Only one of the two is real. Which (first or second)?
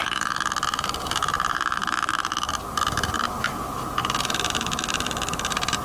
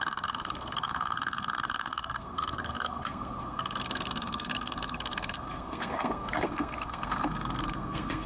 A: first